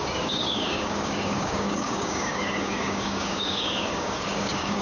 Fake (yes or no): yes